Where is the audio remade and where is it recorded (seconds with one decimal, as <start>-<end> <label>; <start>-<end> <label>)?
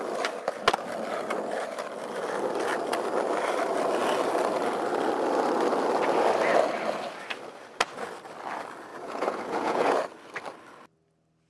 0.0-8.9 recorded; 8.9-10.0 remade; 10.0-11.5 recorded